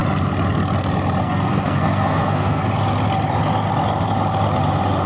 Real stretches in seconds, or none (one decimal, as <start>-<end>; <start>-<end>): 0.0-1.2; 2.6-5.1